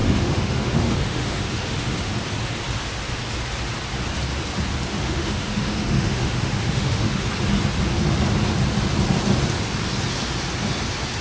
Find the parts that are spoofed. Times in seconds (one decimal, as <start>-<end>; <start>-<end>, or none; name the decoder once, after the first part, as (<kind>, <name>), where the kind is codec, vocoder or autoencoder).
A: 0.0-2.1 (autoencoder, DAC-VAE); 4.9-7.3